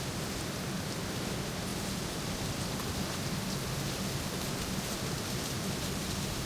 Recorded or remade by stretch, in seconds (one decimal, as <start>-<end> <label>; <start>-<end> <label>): 0.0-6.5 recorded